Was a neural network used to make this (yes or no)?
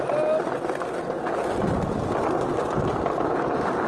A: no